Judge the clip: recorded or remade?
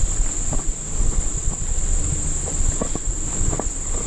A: remade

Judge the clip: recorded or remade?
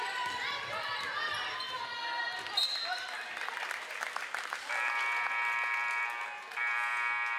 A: remade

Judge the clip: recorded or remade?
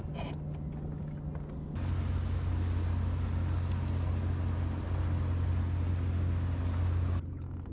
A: recorded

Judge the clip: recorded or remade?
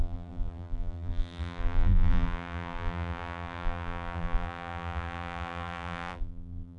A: remade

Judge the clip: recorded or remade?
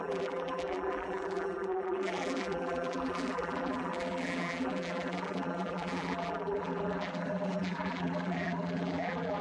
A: remade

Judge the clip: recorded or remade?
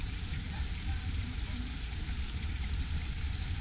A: remade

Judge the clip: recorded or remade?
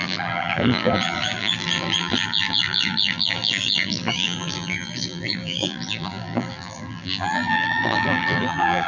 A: remade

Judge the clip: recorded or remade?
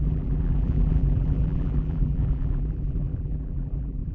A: remade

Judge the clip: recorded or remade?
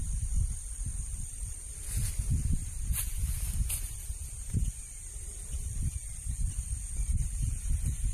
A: remade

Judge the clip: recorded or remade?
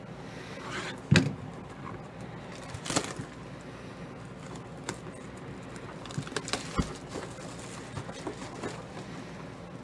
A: recorded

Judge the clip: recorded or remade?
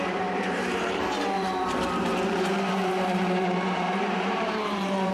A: remade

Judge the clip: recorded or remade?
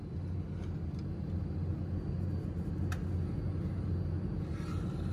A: recorded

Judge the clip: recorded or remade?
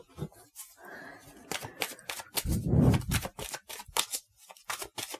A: recorded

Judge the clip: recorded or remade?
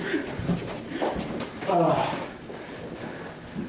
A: remade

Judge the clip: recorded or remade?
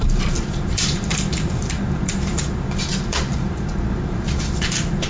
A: remade